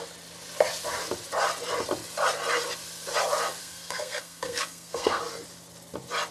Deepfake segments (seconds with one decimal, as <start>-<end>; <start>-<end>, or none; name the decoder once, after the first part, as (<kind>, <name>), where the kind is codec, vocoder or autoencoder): 3.6-5.2 (codec, SNAC)